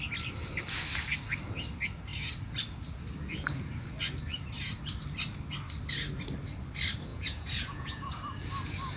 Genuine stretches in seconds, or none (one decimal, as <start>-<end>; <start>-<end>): 0.0-7.1; 8.1-9.0

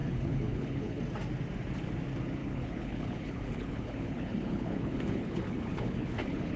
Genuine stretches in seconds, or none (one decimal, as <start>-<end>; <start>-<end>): 1.0-2.4

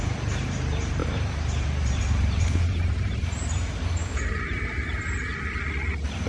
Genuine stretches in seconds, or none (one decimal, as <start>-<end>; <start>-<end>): 5.3-6.3